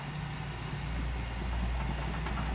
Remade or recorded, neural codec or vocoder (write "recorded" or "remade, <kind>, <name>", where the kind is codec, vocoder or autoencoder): recorded